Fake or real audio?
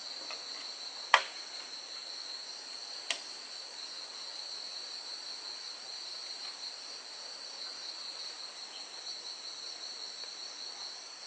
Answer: real